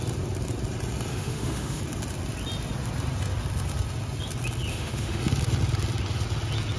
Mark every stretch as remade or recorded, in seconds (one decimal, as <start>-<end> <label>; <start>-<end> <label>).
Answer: 0.0-1.1 recorded; 1.1-1.8 remade; 1.8-4.7 recorded; 4.7-5.2 remade; 5.2-6.8 recorded